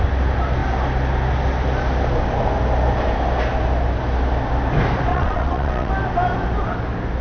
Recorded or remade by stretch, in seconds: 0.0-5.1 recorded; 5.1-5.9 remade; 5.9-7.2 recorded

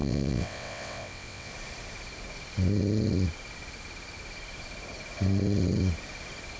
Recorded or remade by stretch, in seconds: 0.0-1.5 remade; 1.5-6.6 recorded

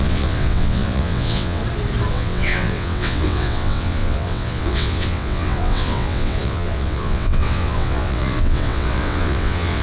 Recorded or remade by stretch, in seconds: 0.0-1.6 remade; 1.6-2.1 recorded; 2.1-9.8 remade

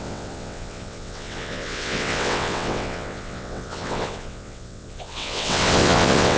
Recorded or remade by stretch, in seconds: 0.0-6.4 remade

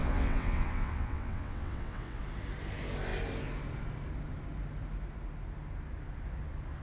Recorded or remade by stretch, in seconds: 0.0-2.2 remade; 2.2-6.8 recorded

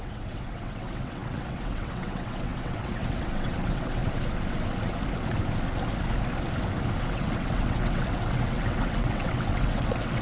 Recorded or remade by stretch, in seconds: 0.0-4.0 remade; 4.0-7.0 recorded; 7.0-10.2 remade